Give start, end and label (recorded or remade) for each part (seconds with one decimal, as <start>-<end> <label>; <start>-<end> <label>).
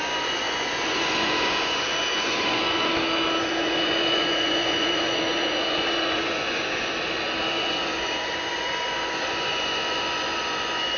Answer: 0.0-2.9 remade; 2.9-3.4 recorded; 3.4-6.9 remade; 6.9-7.5 recorded; 7.5-11.0 remade